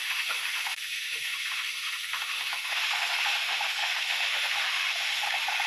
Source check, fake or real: fake